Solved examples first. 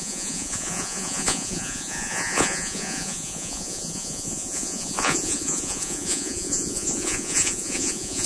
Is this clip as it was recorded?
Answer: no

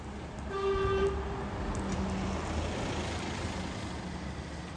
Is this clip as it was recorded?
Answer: yes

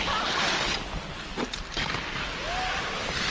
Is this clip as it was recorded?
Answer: yes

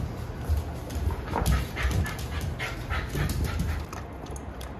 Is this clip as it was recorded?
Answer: yes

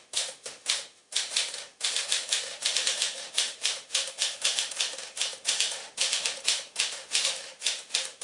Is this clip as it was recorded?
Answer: no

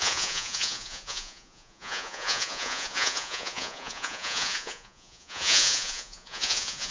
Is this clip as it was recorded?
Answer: no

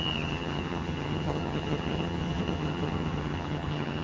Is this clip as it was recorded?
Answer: no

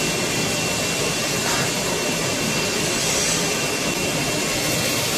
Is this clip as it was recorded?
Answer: yes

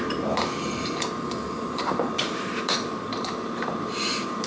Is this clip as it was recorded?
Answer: no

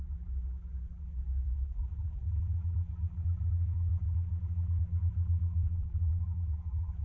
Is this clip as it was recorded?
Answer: no